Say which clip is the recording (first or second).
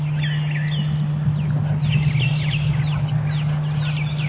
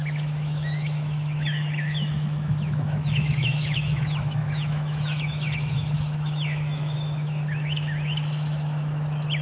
first